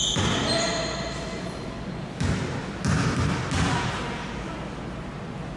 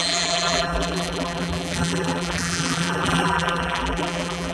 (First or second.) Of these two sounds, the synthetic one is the second